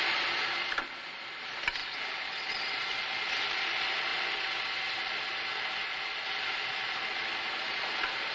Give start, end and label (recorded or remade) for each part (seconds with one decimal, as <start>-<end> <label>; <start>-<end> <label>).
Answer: 0.0-8.3 recorded